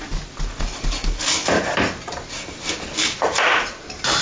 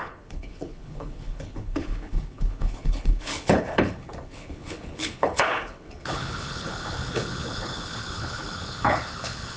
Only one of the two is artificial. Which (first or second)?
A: second